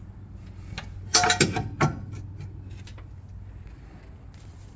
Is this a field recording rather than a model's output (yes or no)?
yes